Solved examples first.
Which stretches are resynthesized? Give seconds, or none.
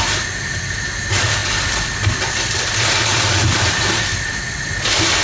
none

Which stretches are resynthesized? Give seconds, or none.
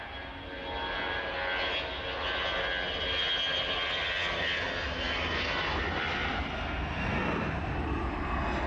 none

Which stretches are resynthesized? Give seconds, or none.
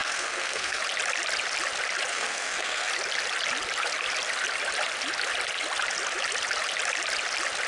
0.0-0.8 (codec, SNAC); 2.1-2.9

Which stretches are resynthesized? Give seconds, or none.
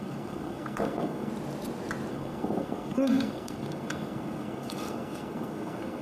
0.0-1.3 (codec, SNAC); 2.1-6.0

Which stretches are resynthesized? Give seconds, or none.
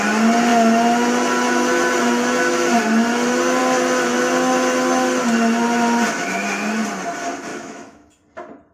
7.5-8.1 (autoencoder, DAC-VAE)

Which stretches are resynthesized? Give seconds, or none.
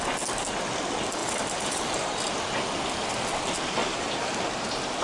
1.2-2.1 (vocoder, BigVGAN v2); 3.8-4.3